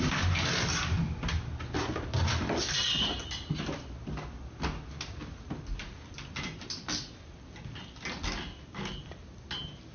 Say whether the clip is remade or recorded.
recorded